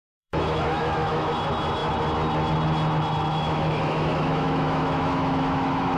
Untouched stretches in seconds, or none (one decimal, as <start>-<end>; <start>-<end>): 1.3-3.3